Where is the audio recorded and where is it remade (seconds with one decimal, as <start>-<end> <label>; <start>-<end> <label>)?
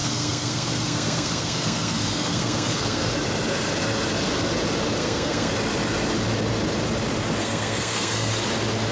0.0-3.1 remade; 3.1-5.0 recorded; 5.0-5.5 remade; 5.5-7.4 recorded; 7.4-8.3 remade; 8.3-8.9 recorded